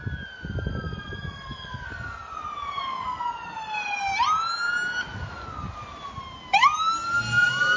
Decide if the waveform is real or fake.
real